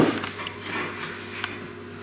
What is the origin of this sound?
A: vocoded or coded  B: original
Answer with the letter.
B